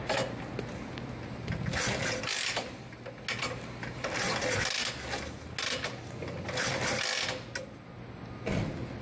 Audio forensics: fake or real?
real